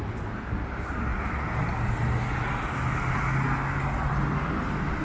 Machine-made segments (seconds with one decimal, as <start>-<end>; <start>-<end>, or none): none